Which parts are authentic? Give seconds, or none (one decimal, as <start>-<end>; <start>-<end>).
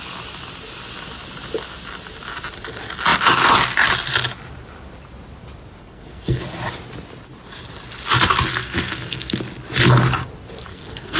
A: 0.0-5.8; 6.4-8.5; 9.4-10.7